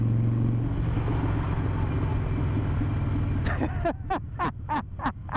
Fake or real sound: real